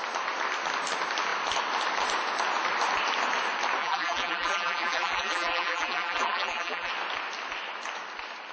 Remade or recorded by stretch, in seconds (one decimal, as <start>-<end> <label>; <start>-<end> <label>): 0.0-3.8 recorded; 3.8-6.9 remade; 6.9-8.5 recorded